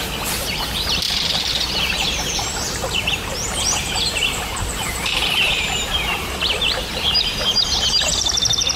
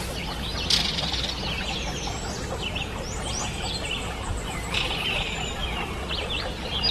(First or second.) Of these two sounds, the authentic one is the second